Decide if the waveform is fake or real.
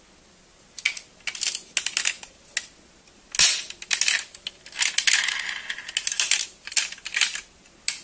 real